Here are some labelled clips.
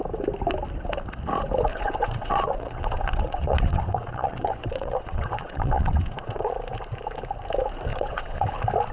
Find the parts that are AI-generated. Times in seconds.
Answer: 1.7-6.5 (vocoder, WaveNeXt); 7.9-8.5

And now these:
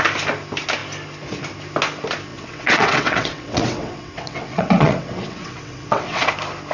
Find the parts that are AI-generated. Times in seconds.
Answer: 2.3-6.3 (vocoder, WaveNeXt)

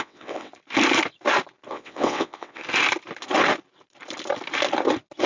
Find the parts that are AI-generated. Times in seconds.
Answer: 0.0-0.5 (vocoder, WaveNeXt); 1.7-2.6

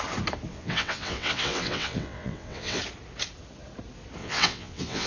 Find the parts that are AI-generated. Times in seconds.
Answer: 0.5-2.8 (vocoder, WaveNeXt); 4.2-5.1

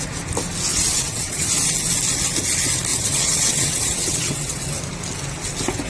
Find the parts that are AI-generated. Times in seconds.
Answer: 0.7-1.5 (vocoder, WaveNeXt); 2.9-4.8

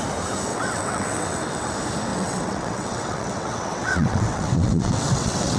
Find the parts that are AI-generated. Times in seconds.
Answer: 0.5-1.7 (vocoder, WaveNeXt); 2.1-5.6

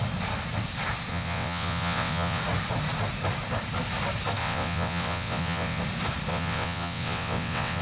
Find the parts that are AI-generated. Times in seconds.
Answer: 1.1-2.4 (vocoder, WaveNeXt); 4.4-5.8; 6.3-7.8

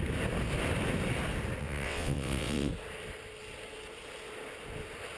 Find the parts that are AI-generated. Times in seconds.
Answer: 1.6-2.7 (vocoder, WaveNeXt)